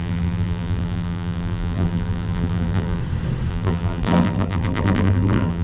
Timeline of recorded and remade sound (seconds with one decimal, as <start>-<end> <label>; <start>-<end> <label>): 0.0-3.0 remade; 3.0-3.5 recorded; 3.5-5.6 remade